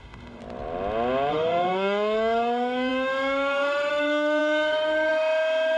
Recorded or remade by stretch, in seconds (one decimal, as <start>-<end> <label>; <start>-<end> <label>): 0.0-0.4 remade; 0.4-1.3 recorded; 1.3-5.8 remade